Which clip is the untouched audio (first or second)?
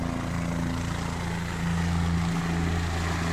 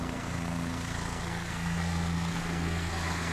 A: first